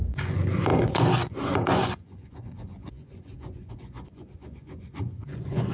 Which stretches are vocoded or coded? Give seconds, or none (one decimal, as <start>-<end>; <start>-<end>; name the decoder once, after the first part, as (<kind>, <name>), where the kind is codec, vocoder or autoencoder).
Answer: 0.0-5.7 (vocoder, Vocos)